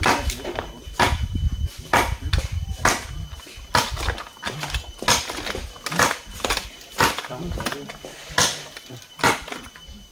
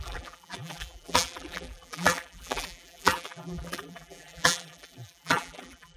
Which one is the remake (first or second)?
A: second